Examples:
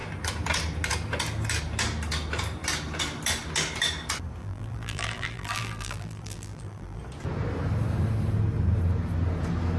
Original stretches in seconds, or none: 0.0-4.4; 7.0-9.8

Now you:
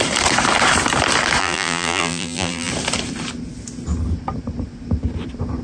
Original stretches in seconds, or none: 0.0-1.4; 2.7-5.6

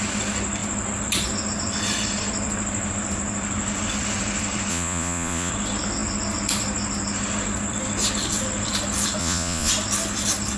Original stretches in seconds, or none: 0.0-4.7; 5.5-9.2; 9.7-10.6

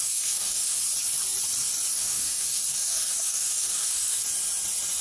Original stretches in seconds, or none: 0.8-1.9; 4.2-5.0

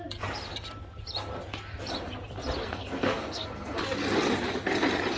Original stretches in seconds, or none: 0.0-2.6; 3.8-5.2

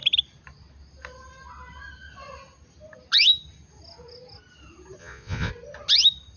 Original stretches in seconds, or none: 0.0-5.0; 5.5-6.4

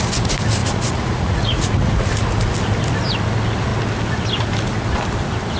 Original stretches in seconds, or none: 0.0-0.6; 2.1-5.6

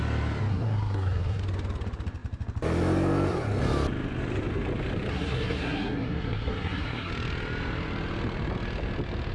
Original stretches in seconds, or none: 0.0-0.5; 1.4-5.1; 7.1-9.3